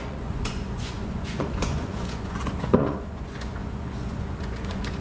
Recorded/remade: remade